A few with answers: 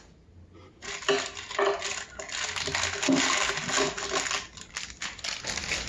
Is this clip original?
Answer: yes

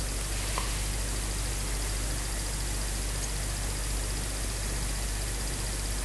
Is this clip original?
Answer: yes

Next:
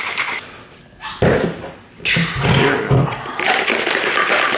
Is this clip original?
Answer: yes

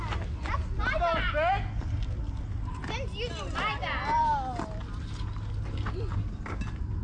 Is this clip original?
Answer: yes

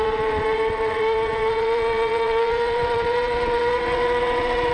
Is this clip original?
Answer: no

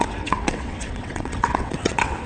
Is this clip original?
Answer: no